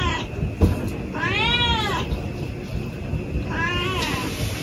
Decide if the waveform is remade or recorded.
recorded